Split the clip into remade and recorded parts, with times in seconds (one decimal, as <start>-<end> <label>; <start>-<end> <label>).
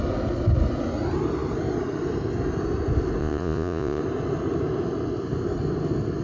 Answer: 0.0-3.2 recorded; 3.2-4.0 remade; 4.0-6.2 recorded